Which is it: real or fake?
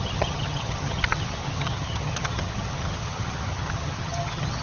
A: fake